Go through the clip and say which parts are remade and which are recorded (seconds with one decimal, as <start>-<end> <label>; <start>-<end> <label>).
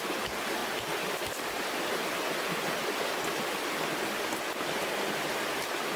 0.0-6.0 recorded